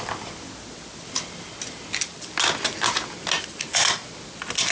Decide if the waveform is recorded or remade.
recorded